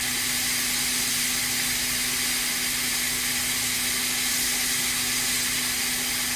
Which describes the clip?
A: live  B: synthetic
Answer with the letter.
A